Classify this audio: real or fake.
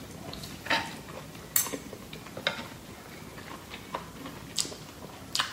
real